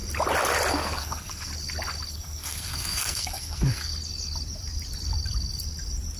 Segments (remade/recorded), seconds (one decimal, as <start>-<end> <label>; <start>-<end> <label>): 0.0-0.7 recorded; 0.7-1.5 remade; 1.5-2.1 recorded; 2.1-3.9 remade; 3.9-6.2 recorded